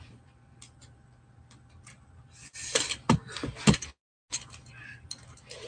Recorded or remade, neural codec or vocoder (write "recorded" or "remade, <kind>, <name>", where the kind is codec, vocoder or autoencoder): recorded